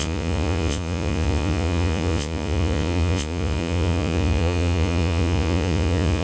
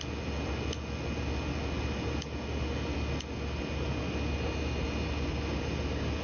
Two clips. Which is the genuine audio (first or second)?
second